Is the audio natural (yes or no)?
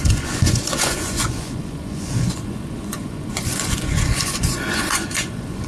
no